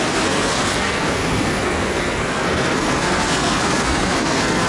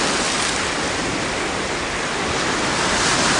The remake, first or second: first